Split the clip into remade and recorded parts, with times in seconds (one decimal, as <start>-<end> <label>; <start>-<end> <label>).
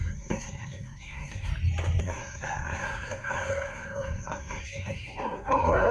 0.0-1.5 remade; 1.5-2.0 recorded; 2.0-5.9 remade